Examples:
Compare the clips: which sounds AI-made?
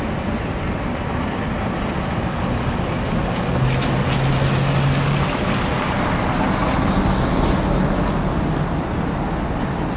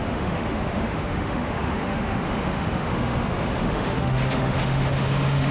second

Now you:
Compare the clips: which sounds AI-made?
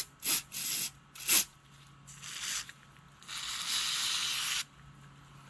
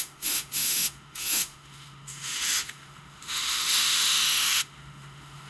second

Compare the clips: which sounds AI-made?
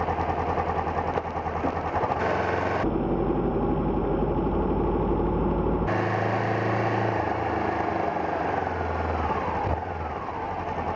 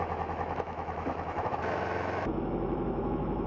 second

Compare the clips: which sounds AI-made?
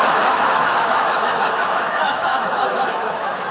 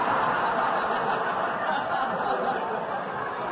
first